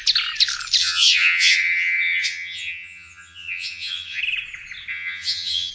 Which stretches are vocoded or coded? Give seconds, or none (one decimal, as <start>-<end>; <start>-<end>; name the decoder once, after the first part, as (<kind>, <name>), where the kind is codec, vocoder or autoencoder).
0.8-4.2 (vocoder, HiFi-GAN); 4.9-5.7